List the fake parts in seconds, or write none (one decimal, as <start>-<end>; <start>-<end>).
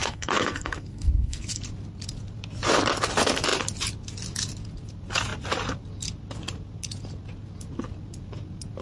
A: 0.0-1.6